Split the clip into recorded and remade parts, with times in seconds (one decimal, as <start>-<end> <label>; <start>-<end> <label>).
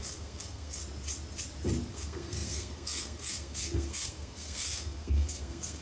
0.0-0.8 remade; 0.8-1.9 recorded; 1.9-5.8 remade